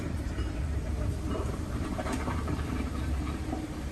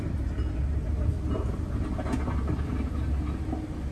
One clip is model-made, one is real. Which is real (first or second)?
second